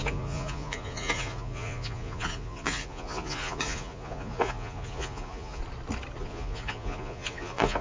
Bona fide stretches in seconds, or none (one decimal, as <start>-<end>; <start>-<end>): 5.6-6.2